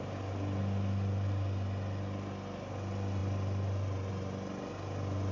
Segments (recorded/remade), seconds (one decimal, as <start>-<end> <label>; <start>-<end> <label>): 0.0-5.3 recorded